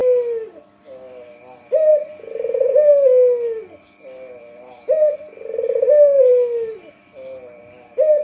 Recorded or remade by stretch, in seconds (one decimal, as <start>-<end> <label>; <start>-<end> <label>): 0.0-8.2 recorded